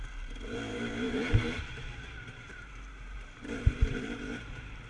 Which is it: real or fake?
fake